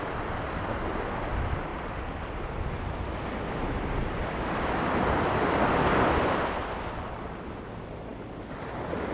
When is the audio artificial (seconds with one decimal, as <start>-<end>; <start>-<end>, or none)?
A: 1.7-2.5; 4.0-5.0; 8.1-8.6